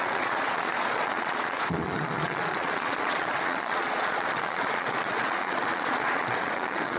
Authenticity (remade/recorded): remade